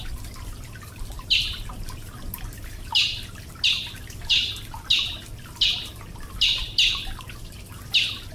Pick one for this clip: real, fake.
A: real